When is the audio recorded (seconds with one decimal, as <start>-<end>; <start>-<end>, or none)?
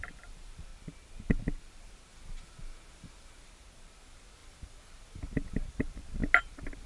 0.7-1.7; 2.1-3.5; 4.4-5.7; 6.2-6.9